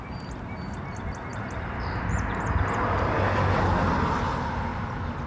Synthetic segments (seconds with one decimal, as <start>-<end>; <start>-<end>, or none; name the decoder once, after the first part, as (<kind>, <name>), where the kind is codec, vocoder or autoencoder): 1.3-2.6 (vocoder, BigVGAN v2); 4.7-5.3